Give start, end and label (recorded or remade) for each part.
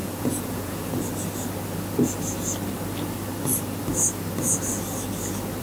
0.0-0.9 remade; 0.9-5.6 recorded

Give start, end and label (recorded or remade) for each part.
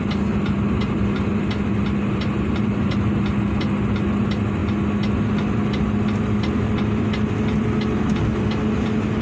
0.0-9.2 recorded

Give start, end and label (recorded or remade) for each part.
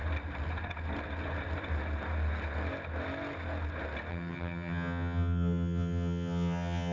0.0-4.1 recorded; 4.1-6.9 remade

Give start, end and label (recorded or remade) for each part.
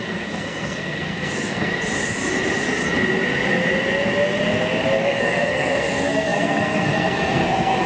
0.0-1.7 remade; 1.7-5.0 recorded; 5.0-7.9 remade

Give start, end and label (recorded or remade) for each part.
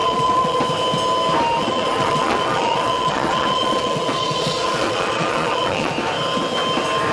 0.0-0.6 remade; 0.6-1.6 recorded; 1.6-5.9 remade; 5.9-7.1 recorded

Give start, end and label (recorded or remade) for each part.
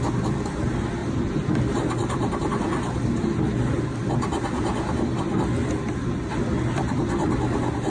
0.0-1.0 recorded; 1.0-1.6 remade; 1.6-7.9 recorded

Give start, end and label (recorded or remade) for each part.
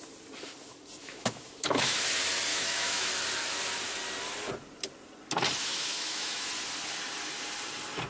0.0-1.0 recorded; 1.0-2.0 remade; 2.0-2.5 recorded; 2.5-3.1 remade; 3.1-5.6 recorded; 5.6-6.5 remade; 6.5-8.1 recorded